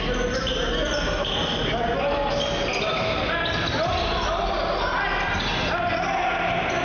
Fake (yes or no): no